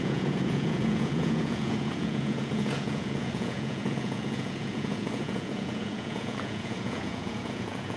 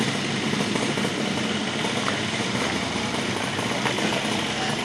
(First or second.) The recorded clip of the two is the second